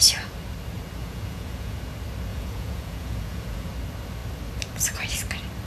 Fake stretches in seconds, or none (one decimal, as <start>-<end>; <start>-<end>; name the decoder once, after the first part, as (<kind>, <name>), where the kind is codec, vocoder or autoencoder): 1.0-1.8 (vocoder, Vocos); 2.3-3.7